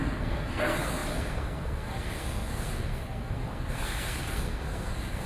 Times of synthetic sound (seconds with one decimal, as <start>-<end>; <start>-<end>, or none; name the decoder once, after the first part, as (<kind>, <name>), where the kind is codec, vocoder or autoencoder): 0.0-5.3 (codec, SNAC)

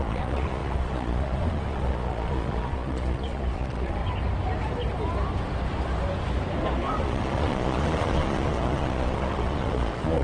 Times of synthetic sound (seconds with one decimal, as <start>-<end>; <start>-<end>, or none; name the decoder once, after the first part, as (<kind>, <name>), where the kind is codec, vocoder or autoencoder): 0.0-4.0 (vocoder, Vocos); 7.0-10.2

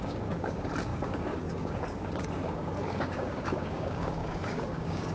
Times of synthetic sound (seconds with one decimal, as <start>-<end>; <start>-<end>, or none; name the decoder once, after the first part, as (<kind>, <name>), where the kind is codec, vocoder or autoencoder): 0.0-5.1 (codec, DAC)

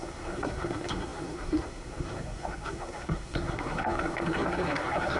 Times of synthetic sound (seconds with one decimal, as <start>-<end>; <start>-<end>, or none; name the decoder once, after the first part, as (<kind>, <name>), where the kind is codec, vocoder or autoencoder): 0.0-5.2 (codec, SNAC)

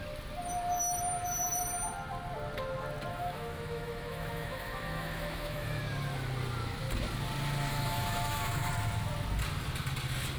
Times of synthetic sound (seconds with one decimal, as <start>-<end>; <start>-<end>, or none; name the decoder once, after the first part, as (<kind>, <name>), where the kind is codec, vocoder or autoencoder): 3.1-5.8 (autoencoder, DAC-VAE); 7.7-8.7

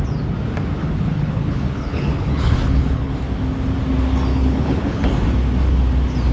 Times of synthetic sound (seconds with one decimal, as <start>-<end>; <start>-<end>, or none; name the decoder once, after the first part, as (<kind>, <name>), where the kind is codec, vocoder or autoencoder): 0.8-3.1 (codec, HILCodec); 4.3-5.0